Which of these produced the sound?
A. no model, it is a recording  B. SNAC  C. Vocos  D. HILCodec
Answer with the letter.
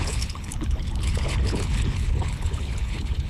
D